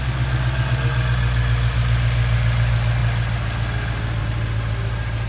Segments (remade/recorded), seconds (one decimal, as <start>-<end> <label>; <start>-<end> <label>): 0.0-5.3 recorded